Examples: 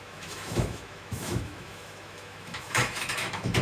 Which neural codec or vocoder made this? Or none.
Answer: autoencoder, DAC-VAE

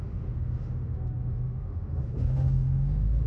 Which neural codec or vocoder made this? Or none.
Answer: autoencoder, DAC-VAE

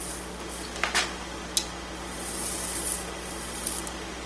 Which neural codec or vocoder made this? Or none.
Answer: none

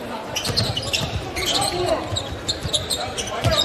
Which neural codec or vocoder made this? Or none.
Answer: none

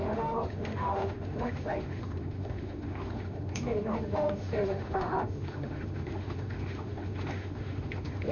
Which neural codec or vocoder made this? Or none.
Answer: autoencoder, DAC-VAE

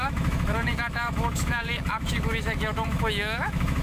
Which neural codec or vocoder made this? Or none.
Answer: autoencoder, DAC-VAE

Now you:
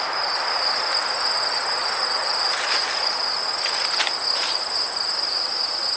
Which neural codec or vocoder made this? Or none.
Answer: none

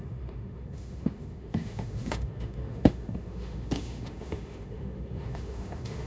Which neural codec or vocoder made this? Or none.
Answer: autoencoder, DAC-VAE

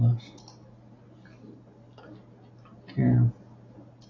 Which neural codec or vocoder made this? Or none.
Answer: none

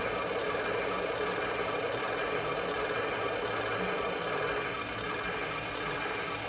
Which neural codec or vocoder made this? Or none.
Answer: none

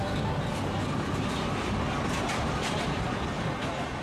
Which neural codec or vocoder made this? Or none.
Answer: none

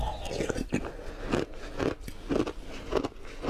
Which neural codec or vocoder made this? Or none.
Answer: none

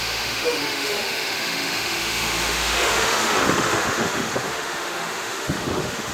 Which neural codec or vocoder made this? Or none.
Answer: autoencoder, DAC-VAE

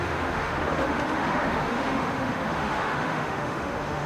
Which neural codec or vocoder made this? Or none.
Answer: autoencoder, DAC-VAE